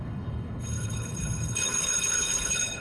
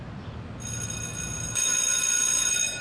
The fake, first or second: first